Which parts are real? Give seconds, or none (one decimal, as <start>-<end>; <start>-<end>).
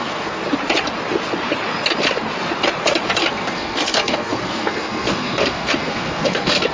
0.4-3.3